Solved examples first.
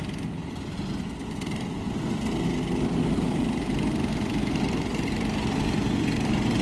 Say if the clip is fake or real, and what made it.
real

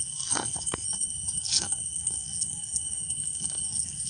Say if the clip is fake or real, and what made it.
fake, codec, SNAC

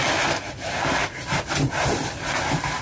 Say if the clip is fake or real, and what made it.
real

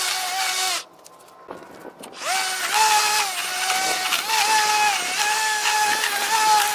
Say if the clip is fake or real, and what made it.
real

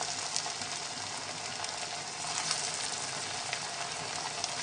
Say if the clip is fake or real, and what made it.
real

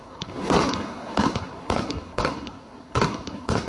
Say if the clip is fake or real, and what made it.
fake, codec, SNAC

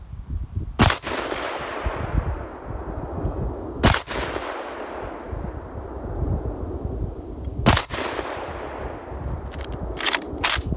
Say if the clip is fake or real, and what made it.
real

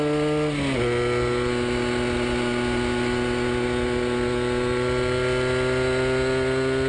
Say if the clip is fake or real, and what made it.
real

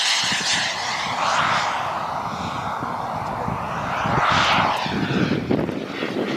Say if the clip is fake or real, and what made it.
real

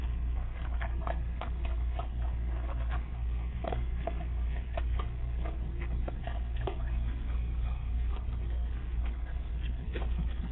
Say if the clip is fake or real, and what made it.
fake, codec, SNAC